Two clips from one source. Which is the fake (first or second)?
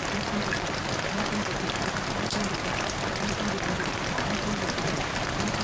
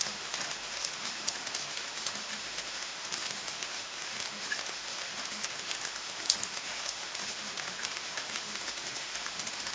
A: second